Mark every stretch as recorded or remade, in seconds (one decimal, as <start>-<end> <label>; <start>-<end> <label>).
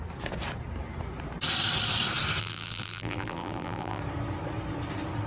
0.0-2.4 recorded; 2.4-4.0 remade; 4.0-5.3 recorded